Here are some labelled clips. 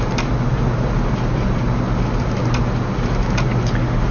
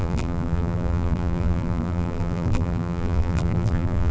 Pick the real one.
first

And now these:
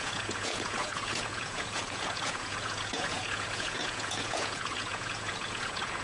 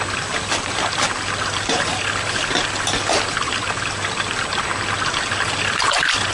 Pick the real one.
second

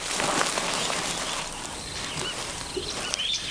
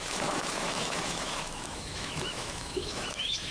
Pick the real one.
first